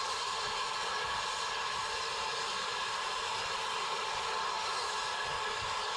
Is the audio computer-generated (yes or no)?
no